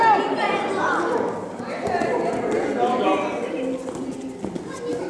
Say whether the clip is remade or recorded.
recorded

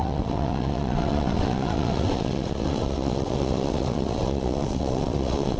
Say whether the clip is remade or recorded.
remade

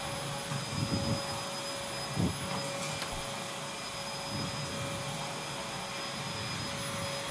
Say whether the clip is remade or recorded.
recorded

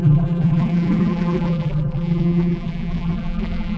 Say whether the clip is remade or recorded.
remade